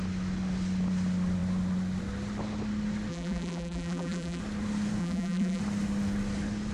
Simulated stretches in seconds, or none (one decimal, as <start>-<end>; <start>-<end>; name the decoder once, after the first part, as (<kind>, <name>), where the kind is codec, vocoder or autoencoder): 3.1-4.4 (vocoder, BigVGAN v2); 5.0-5.6